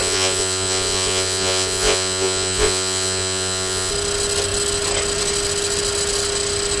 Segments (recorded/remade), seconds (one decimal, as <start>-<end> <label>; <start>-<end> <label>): 0.0-3.9 remade; 3.9-6.8 recorded